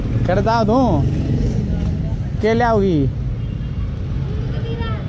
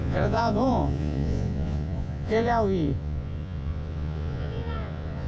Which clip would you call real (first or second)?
first